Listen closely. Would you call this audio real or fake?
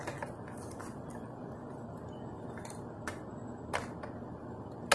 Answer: real